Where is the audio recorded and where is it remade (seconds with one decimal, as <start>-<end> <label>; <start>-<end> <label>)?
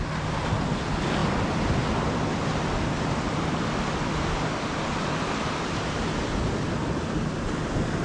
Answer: 0.0-8.0 recorded